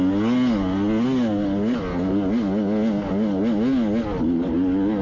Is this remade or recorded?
recorded